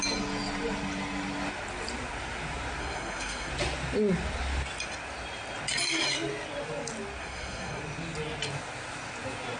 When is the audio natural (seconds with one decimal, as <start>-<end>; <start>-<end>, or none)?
0.0-2.8; 3.5-7.2; 7.8-9.6